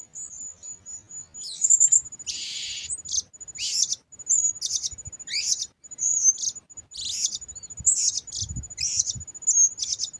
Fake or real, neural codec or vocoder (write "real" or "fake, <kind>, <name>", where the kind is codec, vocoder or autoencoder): real